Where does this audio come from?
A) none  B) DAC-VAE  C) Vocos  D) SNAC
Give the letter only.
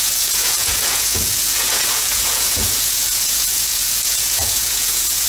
C